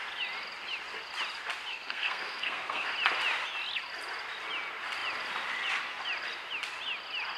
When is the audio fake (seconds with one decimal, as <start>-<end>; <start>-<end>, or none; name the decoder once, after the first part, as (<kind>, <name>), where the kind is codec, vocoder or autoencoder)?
1.7-2.9 (codec, SNAC)